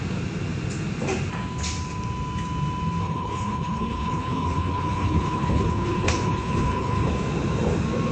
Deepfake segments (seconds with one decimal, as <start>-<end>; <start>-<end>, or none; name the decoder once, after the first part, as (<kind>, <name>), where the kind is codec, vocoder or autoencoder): 3.0-7.1 (codec, HILCodec)